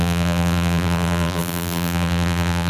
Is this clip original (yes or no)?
no